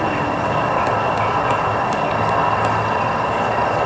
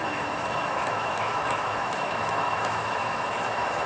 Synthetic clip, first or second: second